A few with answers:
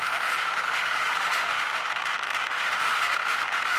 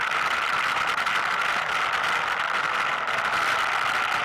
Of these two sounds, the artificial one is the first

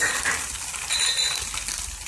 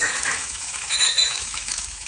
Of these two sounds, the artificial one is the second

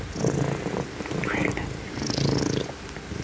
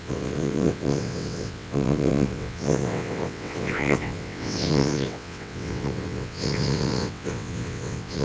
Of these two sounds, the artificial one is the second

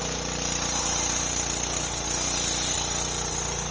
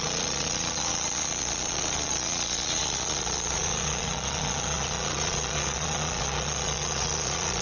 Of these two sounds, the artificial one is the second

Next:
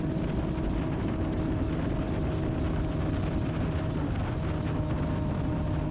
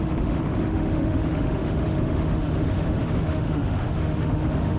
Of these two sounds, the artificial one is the second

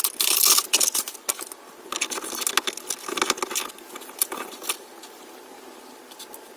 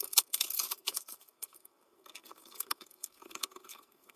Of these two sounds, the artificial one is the second